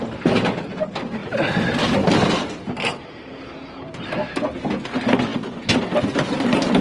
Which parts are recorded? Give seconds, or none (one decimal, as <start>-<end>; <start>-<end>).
0.0-1.2; 3.3-6.8